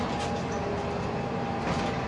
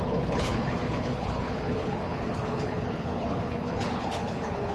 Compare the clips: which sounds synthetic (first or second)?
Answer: second